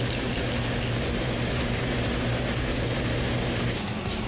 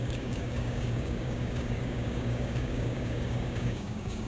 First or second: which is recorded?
first